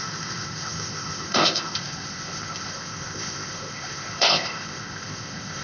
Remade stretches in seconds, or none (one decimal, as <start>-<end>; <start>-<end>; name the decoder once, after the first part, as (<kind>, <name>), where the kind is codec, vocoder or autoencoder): 0.0-5.6 (codec, ZipCodec)